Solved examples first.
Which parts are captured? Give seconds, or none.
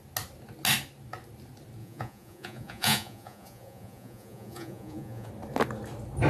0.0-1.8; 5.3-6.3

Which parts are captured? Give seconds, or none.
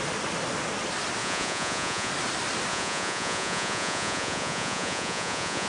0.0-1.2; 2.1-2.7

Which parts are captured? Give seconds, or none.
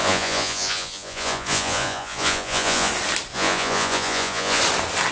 2.9-3.3; 4.6-5.1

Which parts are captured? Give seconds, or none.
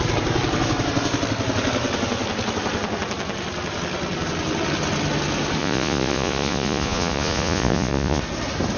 0.0-5.6; 8.2-8.8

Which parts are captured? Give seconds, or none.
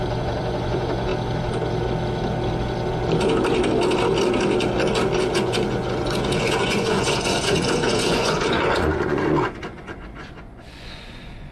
1.1-5.3